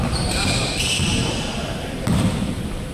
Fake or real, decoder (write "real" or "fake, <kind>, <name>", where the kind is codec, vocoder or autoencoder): fake, vocoder, BigVGAN v2